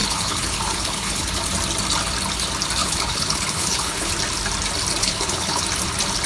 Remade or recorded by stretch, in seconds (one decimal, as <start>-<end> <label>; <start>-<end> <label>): 0.0-1.4 remade; 1.4-2.8 recorded; 2.8-4.1 remade; 4.1-5.0 recorded; 5.0-5.6 remade; 5.6-6.3 recorded